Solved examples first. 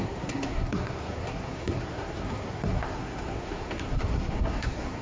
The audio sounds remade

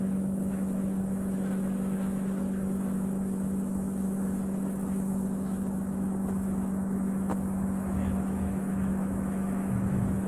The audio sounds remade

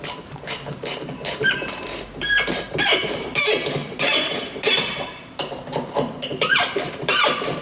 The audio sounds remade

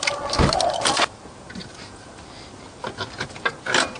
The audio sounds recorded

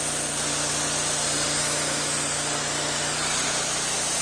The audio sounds recorded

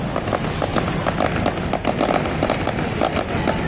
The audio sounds recorded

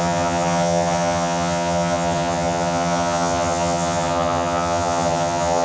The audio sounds remade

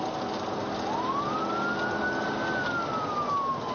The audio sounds recorded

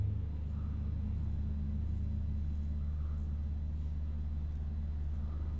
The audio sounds recorded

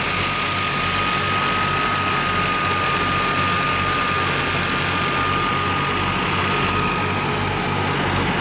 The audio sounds recorded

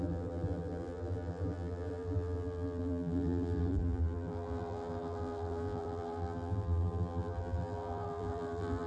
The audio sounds remade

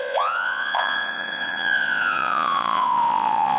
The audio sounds remade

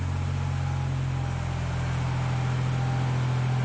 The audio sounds recorded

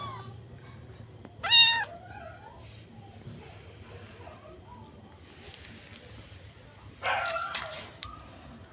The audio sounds recorded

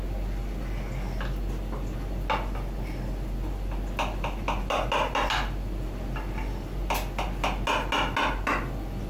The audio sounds recorded